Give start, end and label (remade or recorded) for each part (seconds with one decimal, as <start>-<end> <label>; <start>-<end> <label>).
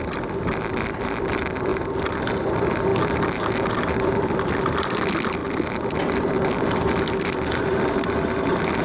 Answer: 0.0-5.4 remade; 5.4-7.5 recorded; 7.5-8.8 remade